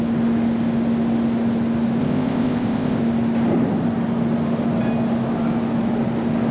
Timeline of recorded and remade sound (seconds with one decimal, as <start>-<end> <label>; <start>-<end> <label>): 0.0-2.0 recorded; 2.0-3.0 remade; 3.0-6.5 recorded